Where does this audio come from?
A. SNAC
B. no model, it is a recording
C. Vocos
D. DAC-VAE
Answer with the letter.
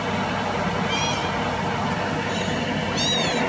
B